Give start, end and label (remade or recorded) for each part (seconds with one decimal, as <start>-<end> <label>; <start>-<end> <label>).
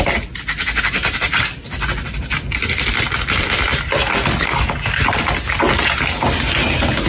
0.0-1.0 recorded; 1.0-4.5 remade; 4.5-7.1 recorded